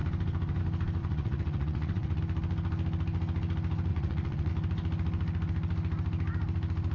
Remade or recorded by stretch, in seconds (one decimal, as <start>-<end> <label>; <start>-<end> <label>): 0.0-1.0 recorded; 1.0-2.2 remade; 2.2-3.9 recorded; 3.9-4.5 remade; 4.5-6.9 recorded